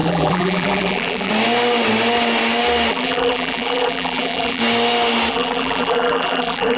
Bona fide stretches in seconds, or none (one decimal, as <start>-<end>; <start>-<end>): 1.3-2.9; 4.6-5.3